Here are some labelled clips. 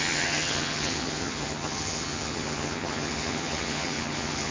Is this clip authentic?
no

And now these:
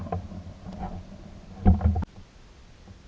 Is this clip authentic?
yes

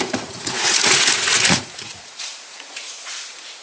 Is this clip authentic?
no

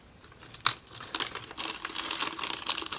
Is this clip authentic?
yes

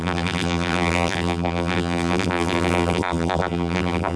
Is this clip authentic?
no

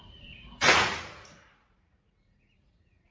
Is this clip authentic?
no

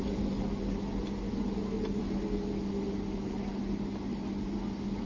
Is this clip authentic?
yes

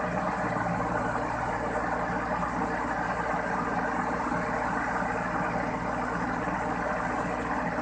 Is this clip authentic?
yes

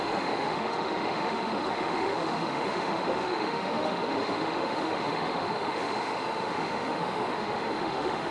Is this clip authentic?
no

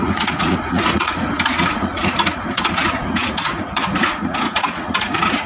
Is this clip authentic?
no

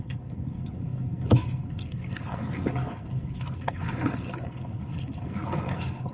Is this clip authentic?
no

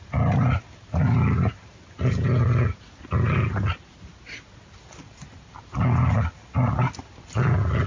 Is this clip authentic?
yes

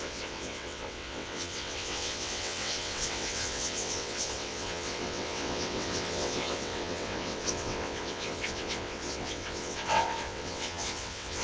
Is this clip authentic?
no